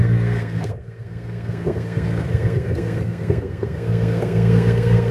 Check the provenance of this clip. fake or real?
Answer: fake